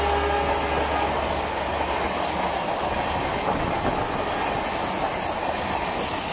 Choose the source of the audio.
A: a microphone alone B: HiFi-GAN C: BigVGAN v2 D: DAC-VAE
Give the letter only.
A